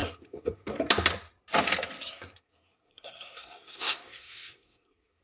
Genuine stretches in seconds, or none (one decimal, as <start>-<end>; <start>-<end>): 0.9-2.1